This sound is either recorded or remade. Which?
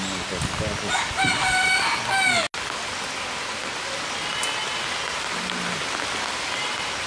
recorded